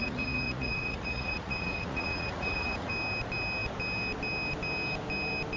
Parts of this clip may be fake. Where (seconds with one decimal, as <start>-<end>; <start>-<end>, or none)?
0.0-2.9

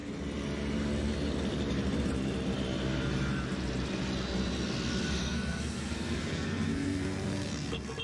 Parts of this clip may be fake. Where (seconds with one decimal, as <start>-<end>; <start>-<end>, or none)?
5.2-8.0